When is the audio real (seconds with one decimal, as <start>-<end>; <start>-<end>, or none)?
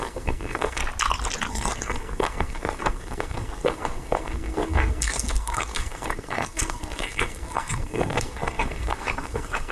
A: 0.8-1.5